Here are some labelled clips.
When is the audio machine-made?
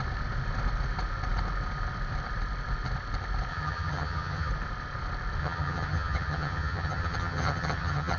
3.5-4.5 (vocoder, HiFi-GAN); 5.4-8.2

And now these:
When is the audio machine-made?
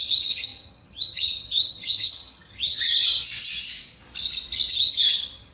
0.0-3.2 (vocoder, HiFi-GAN); 4.7-5.5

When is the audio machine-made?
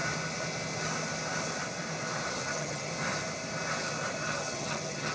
2.4-2.9 (vocoder, HiFi-GAN); 4.2-5.1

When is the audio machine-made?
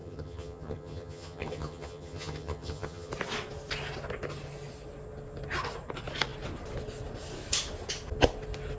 0.0-3.1 (vocoder, HiFi-GAN)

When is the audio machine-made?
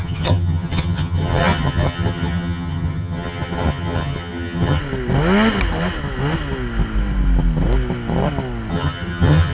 0.0-4.8 (vocoder, HiFi-GAN); 8.7-9.5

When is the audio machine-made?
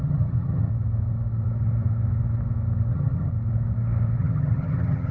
0.0-0.7 (vocoder, HiFi-GAN); 2.9-3.3; 4.2-5.1